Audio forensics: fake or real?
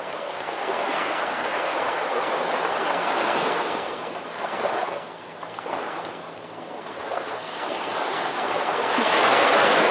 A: fake